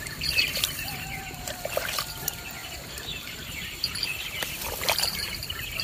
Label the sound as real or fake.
fake